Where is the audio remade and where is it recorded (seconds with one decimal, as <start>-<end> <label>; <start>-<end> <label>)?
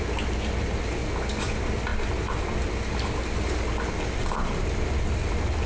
0.0-1.9 recorded; 1.9-2.7 remade; 2.7-4.2 recorded; 4.2-5.3 remade; 5.3-5.7 recorded